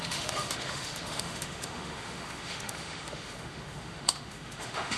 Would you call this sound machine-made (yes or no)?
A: yes